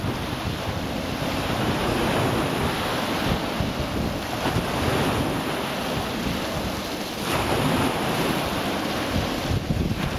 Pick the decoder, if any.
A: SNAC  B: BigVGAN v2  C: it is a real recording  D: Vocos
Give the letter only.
C